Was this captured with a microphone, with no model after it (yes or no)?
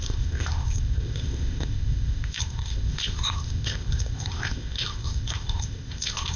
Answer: no